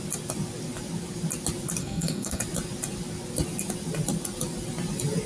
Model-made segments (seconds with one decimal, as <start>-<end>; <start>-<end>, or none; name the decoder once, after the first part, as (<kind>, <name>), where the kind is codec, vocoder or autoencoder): 1.8-2.4 (codec, SNAC)